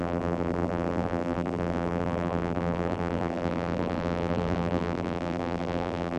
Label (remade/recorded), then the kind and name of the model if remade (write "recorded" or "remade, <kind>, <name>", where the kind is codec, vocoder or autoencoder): remade, vocoder, BigVGAN v2